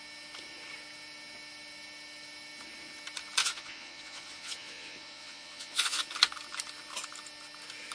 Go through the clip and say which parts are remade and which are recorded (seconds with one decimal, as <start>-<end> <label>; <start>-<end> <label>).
0.0-3.4 recorded; 3.4-6.0 remade; 6.0-7.9 recorded